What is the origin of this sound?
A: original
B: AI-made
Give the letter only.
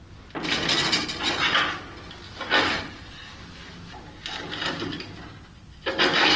A